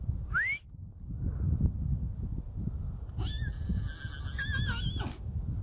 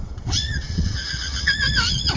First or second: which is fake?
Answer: second